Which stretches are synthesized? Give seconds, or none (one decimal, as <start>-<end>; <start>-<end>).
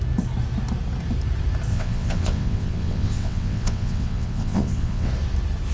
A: 1.7-5.1